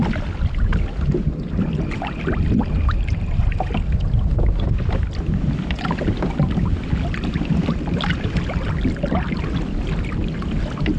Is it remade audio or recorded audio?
recorded